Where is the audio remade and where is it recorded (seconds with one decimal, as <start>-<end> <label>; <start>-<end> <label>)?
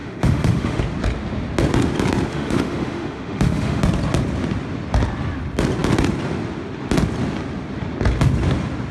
0.0-0.8 remade; 0.8-2.3 recorded; 2.3-3.8 remade; 3.8-8.9 recorded